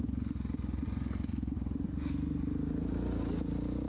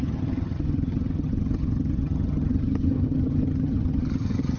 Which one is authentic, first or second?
first